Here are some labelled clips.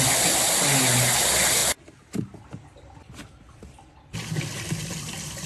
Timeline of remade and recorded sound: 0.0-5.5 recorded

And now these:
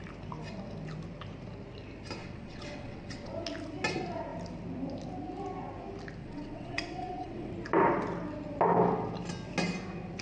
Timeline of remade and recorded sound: 0.0-2.2 recorded; 2.2-3.3 remade; 3.3-6.2 recorded; 6.2-7.5 remade; 7.5-10.2 recorded

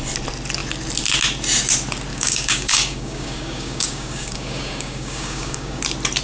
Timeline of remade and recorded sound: 0.0-2.1 recorded; 2.1-5.8 remade; 5.8-6.2 recorded

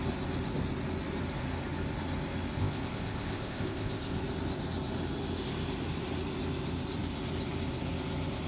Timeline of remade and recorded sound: 0.0-2.6 recorded; 2.6-4.2 remade; 4.2-8.5 recorded

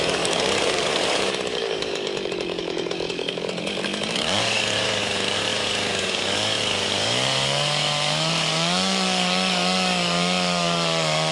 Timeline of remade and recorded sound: 0.0-11.3 remade

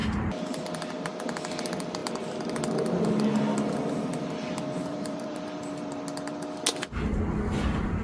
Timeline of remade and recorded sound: 0.0-0.6 remade; 0.6-4.8 recorded; 4.8-5.6 remade; 5.6-8.0 recorded

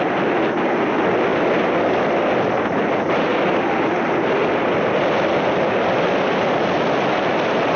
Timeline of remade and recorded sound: 0.0-7.8 recorded